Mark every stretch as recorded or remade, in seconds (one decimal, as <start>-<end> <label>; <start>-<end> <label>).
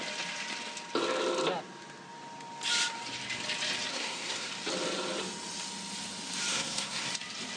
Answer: 0.0-3.9 recorded; 3.9-4.5 remade; 4.5-6.5 recorded; 6.5-7.1 remade; 7.1-7.6 recorded